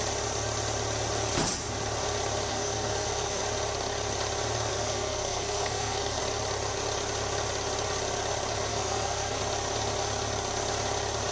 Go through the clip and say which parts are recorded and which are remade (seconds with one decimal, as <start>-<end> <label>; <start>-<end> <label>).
0.0-2.5 recorded; 2.5-3.4 remade; 3.4-4.7 recorded; 4.7-6.2 remade; 6.2-8.7 recorded; 8.7-9.4 remade; 9.4-11.3 recorded

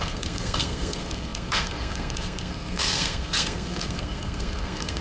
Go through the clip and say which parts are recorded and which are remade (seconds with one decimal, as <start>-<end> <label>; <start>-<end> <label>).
0.0-5.0 remade

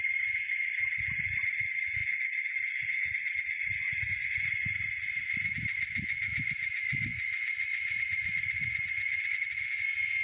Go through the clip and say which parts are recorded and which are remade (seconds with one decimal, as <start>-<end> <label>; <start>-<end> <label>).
0.0-10.2 recorded

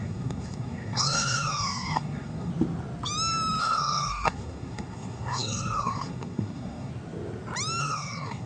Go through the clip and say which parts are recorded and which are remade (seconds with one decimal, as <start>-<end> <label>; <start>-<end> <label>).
0.0-2.5 remade; 2.5-3.6 recorded; 3.6-6.9 remade; 6.9-7.8 recorded; 7.8-8.5 remade